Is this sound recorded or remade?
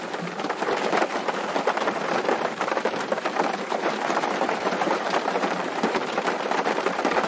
remade